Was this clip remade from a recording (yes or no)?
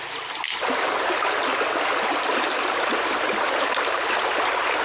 no